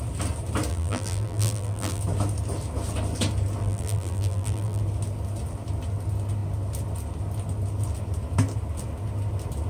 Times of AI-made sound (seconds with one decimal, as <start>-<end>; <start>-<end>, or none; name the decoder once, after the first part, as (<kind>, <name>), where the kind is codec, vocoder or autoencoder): 0.7-2.0 (vocoder, BigVGAN v2); 3.6-4.8